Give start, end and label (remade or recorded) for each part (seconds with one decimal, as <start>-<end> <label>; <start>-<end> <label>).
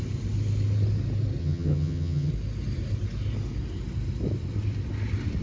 0.0-1.4 recorded; 1.4-2.3 remade; 2.3-5.4 recorded